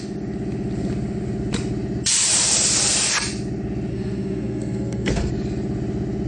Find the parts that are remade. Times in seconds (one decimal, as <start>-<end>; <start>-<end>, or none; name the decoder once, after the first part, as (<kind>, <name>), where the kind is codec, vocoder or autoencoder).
3.9-5.3 (codec, SNAC)